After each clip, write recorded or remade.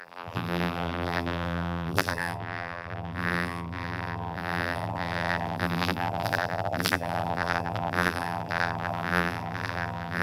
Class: remade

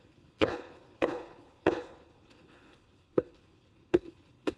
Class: remade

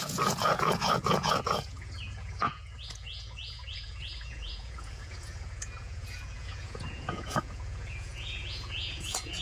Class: remade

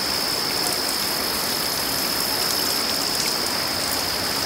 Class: recorded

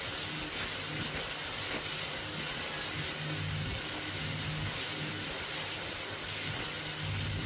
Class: recorded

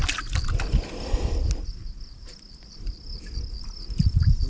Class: recorded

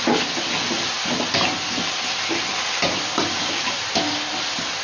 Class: recorded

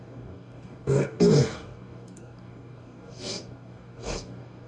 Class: remade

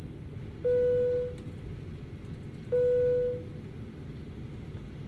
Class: recorded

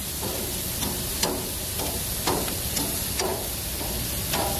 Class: recorded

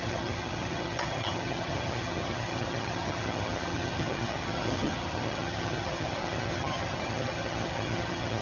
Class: remade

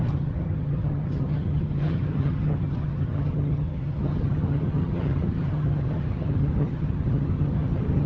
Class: remade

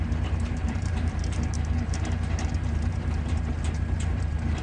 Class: remade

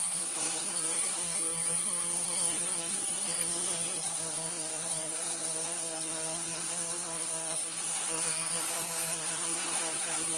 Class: remade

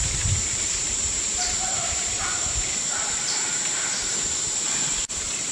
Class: remade